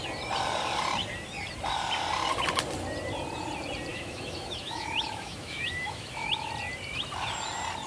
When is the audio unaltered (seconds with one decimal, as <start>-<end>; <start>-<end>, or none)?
0.0-3.9; 6.5-7.9